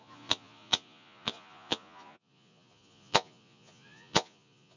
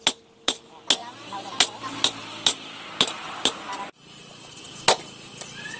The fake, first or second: first